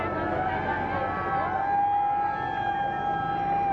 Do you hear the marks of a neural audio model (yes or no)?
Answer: no